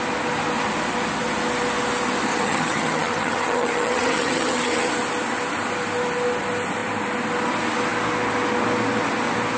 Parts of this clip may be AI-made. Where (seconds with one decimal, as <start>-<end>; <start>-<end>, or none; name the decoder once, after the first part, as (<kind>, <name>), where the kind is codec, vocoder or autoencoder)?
2.3-4.9 (vocoder, HiFi-GAN)